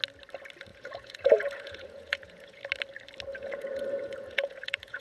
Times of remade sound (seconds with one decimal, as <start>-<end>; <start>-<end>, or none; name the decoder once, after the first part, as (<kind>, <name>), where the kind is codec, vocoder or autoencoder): 0.7-2.6 (vocoder, Vocos); 3.3-5.0